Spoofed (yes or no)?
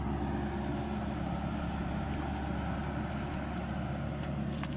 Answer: no